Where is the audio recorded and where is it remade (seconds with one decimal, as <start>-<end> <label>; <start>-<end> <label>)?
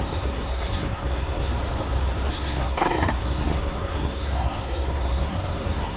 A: 0.0-1.5 remade; 1.5-2.3 recorded; 2.3-6.0 remade